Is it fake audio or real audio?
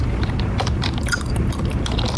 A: real